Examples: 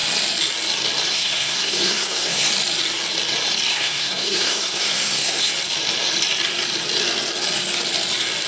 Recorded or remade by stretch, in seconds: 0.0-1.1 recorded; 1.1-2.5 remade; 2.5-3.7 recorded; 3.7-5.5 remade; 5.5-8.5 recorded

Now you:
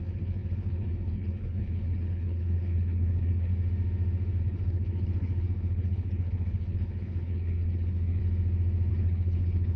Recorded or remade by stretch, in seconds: 0.0-3.5 remade; 3.5-4.4 recorded; 4.4-8.2 remade; 8.2-8.9 recorded; 8.9-9.8 remade

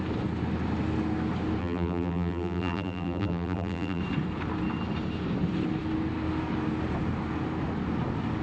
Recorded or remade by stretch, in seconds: 0.0-1.6 recorded; 1.6-4.0 remade; 4.0-8.4 recorded

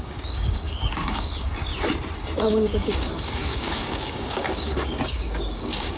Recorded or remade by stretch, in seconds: 0.0-1.7 remade; 1.7-2.4 recorded; 2.4-6.0 remade

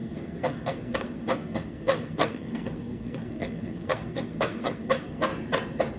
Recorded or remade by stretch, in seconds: 0.0-5.3 remade; 5.3-6.0 recorded

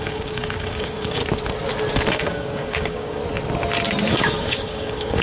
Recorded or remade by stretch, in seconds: 0.0-1.2 remade; 1.2-2.1 recorded; 2.1-3.2 remade; 3.2-4.1 recorded; 4.1-5.2 remade